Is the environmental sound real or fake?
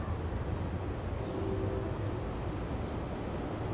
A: real